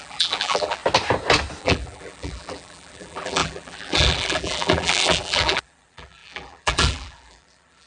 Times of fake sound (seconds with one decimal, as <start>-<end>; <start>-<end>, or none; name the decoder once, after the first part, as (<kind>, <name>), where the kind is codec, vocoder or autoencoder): 0.0-0.8 (vocoder, BigVGAN v2); 1.6-7.9